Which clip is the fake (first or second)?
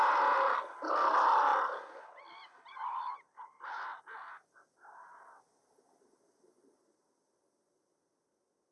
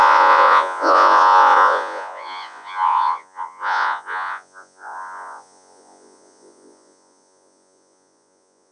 second